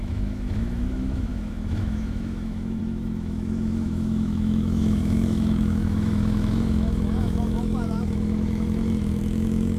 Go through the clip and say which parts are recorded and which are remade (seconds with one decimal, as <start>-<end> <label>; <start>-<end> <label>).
0.0-9.8 remade